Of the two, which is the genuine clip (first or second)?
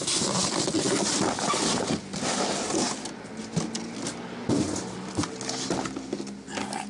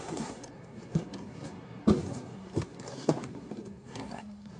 first